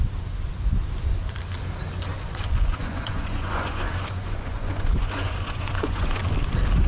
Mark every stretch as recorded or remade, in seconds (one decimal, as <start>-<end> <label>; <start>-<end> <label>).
0.0-2.1 recorded; 2.1-6.2 remade; 6.2-6.9 recorded